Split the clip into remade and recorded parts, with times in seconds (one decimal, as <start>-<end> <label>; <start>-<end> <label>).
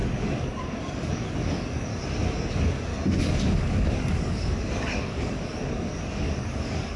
0.0-1.9 remade; 1.9-2.5 recorded; 2.5-2.9 remade; 2.9-3.5 recorded; 3.5-7.0 remade